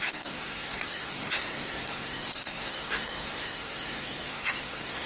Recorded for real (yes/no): no